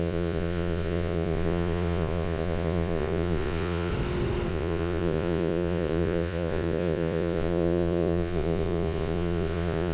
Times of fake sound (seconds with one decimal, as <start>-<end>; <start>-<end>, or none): 0.0-3.9; 4.5-9.9